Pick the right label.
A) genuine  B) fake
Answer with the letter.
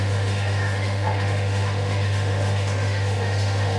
B